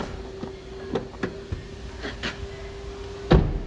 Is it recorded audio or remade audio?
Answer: recorded